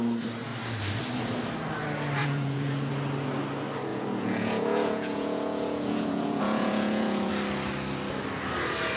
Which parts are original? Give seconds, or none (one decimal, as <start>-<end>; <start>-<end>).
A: 0.0-2.2; 2.7-3.9; 7.3-9.0